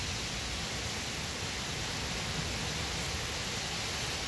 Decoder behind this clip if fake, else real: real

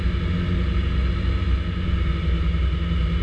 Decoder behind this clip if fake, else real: real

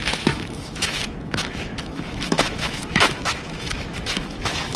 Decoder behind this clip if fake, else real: fake, autoencoder, DAC-VAE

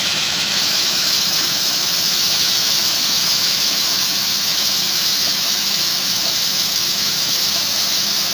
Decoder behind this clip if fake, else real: fake, autoencoder, DAC-VAE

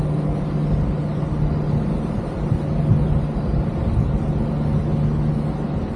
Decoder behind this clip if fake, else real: real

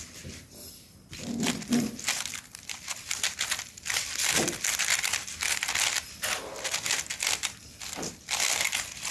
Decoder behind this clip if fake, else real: real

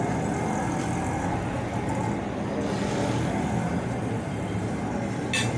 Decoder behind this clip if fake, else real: real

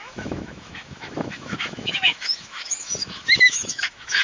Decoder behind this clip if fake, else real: fake, autoencoder, DAC-VAE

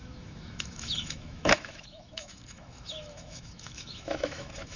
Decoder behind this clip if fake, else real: fake, autoencoder, DAC-VAE